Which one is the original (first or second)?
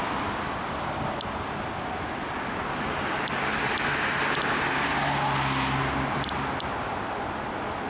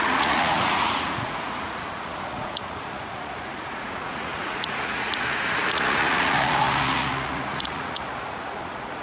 first